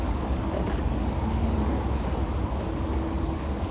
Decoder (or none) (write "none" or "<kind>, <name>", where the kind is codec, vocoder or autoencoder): codec, DAC